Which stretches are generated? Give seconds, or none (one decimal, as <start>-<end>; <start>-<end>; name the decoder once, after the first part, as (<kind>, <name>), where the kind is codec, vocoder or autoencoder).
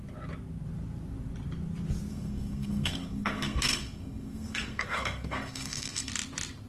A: 2.1-6.1 (codec, SNAC)